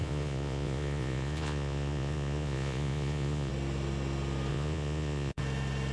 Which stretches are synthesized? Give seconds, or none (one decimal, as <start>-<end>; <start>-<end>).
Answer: 0.0-3.5; 4.5-5.4